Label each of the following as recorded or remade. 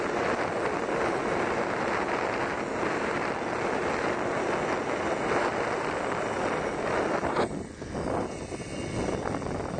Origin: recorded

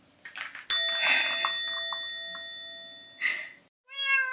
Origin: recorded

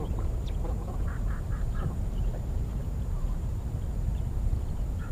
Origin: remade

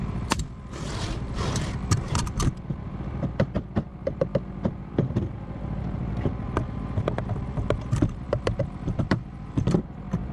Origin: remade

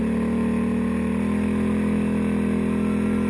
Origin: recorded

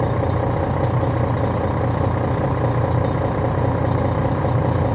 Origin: recorded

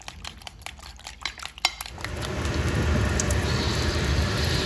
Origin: recorded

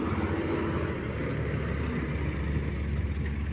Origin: recorded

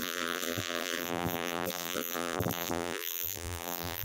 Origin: remade